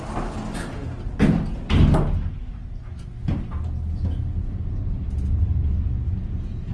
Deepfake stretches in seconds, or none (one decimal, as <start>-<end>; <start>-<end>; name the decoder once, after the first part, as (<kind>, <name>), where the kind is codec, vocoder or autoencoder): none